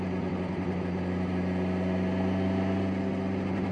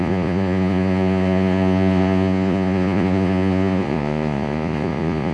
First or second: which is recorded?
first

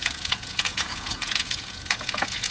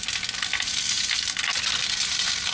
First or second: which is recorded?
second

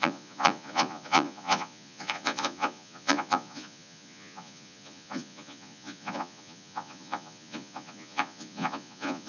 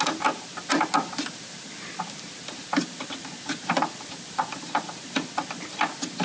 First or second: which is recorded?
second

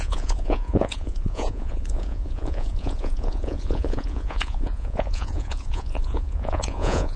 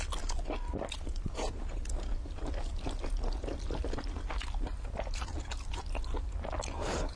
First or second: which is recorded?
second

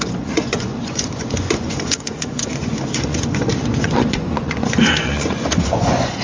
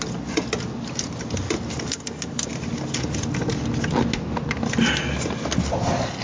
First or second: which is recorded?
second